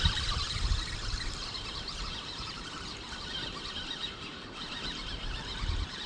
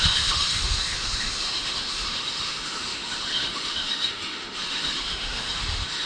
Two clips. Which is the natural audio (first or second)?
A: first